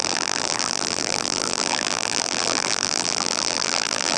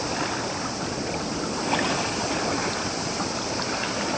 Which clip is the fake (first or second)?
first